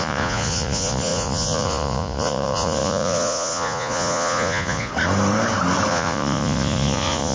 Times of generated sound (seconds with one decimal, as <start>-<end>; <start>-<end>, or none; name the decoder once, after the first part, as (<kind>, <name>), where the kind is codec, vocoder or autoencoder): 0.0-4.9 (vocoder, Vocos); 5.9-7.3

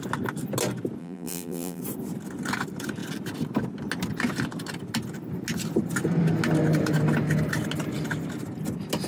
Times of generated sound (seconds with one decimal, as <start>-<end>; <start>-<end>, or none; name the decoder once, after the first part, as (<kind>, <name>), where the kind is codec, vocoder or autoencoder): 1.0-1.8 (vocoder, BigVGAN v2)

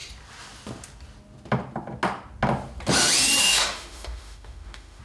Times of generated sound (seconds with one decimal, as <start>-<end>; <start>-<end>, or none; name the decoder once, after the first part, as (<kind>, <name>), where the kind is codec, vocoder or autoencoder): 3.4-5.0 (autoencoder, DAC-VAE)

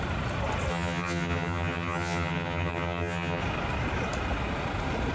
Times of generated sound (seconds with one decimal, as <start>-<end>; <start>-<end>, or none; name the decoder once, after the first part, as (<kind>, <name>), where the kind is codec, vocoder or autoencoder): 0.7-3.4 (vocoder, HiFi-GAN)

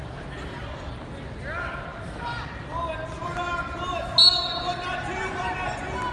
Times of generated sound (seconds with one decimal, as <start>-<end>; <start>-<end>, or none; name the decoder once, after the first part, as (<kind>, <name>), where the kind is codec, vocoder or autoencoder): none